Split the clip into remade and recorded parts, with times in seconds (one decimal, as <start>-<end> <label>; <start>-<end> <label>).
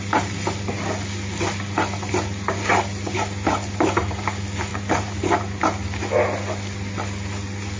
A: 0.0-4.7 recorded; 4.7-5.6 remade; 5.6-7.8 recorded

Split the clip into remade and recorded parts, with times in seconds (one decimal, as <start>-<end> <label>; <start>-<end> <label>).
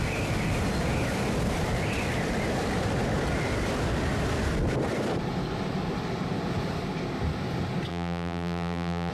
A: 0.0-7.9 recorded; 7.9-9.1 remade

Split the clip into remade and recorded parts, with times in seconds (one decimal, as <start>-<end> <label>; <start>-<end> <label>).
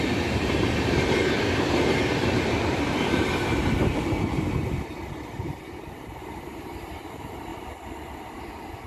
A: 0.0-7.5 remade; 7.5-8.9 recorded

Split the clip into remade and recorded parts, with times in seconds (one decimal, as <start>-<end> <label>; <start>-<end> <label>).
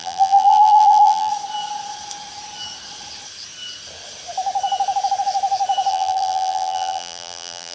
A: 0.0-1.3 remade; 1.3-5.9 recorded; 5.9-7.7 remade